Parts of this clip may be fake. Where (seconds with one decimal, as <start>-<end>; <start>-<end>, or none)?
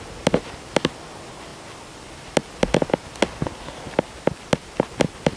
none